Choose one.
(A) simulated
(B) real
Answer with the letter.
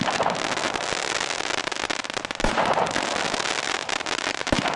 B